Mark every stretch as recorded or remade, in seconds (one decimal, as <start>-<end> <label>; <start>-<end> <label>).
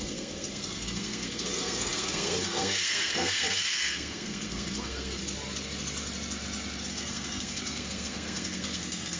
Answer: 0.0-5.2 remade; 5.2-6.9 recorded; 6.9-9.2 remade